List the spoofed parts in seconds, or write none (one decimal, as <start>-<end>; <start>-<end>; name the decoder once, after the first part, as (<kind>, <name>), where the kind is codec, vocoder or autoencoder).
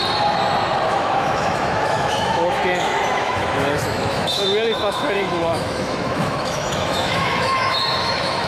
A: 0.9-8.5 (autoencoder, DAC-VAE)